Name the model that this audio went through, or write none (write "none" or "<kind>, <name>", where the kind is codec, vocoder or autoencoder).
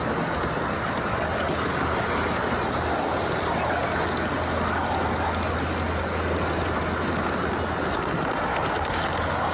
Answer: none